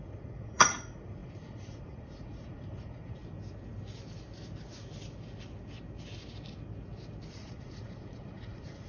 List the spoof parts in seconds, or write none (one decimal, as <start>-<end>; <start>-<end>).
0.0-3.2; 7.3-8.9